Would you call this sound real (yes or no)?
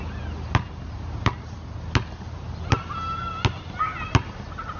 yes